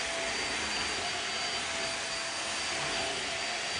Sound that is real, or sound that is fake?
real